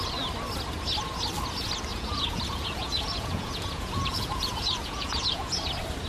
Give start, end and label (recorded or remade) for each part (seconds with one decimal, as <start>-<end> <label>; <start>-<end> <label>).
0.0-1.9 recorded; 1.9-5.5 remade; 5.5-6.1 recorded